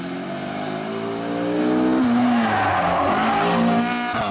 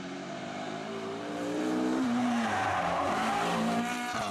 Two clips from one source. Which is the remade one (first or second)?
second